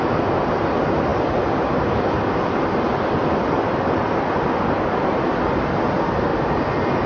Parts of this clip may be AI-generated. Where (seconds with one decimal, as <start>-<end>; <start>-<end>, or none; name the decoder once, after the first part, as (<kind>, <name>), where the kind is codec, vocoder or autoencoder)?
none